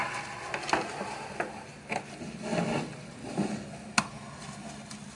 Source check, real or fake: real